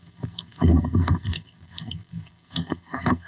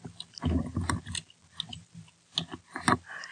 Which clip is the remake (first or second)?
first